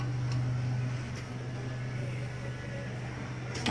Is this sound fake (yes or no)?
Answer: no